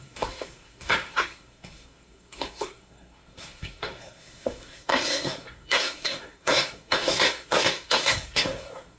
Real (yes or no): no